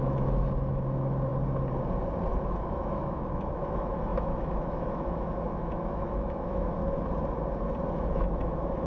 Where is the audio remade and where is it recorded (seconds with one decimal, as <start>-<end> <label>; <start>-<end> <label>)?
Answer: 0.0-1.3 remade; 1.3-2.4 recorded; 2.4-6.8 remade; 6.8-7.9 recorded; 7.9-8.9 remade